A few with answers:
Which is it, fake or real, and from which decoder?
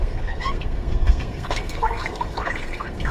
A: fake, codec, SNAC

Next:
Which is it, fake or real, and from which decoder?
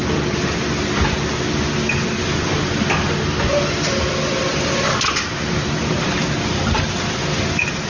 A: real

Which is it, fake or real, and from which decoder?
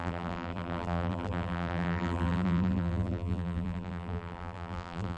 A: fake, vocoder, BigVGAN v2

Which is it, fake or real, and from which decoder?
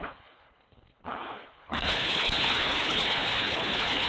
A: fake, codec, HILCodec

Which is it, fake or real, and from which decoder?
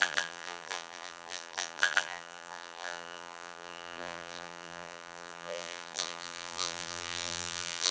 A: fake, vocoder, BigVGAN v2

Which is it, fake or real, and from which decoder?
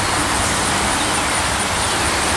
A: real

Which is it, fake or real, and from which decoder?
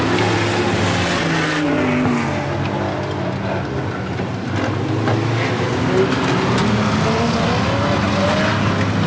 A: real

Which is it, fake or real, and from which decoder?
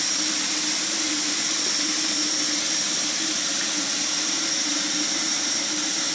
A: fake, vocoder, BigVGAN v2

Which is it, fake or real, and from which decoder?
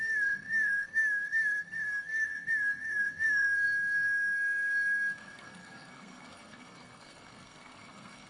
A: fake, codec, SNAC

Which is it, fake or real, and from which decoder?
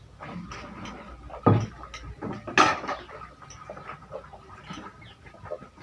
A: real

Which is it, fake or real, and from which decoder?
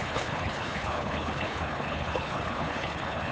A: fake, codec, HILCodec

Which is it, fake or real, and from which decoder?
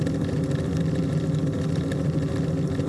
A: real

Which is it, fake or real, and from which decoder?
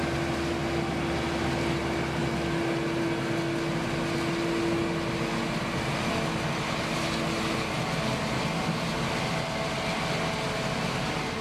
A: real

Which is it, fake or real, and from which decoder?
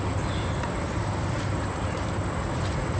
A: fake, vocoder, BigVGAN v2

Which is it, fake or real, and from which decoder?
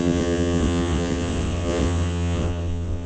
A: fake, vocoder, WaveNeXt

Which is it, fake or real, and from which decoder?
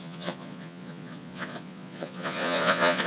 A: fake, vocoder, Vocos